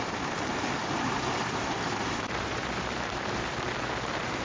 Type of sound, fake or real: fake